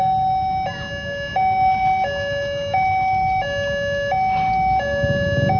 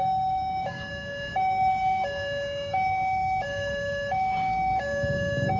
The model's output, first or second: second